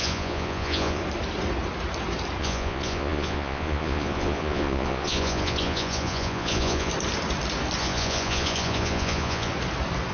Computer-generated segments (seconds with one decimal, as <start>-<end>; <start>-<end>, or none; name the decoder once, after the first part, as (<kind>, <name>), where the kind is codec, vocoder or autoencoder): 0.0-1.0 (vocoder, Vocos); 2.4-6.9; 7.8-9.5